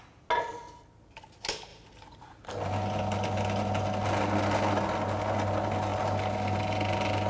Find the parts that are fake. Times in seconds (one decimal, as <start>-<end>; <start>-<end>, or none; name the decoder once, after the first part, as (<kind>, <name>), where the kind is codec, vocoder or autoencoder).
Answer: none